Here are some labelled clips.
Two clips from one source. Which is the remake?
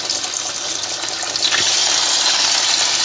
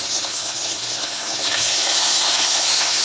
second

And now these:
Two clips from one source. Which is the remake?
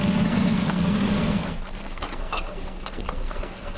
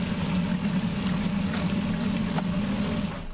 first